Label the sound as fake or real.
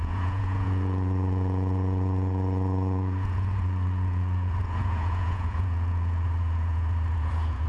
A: fake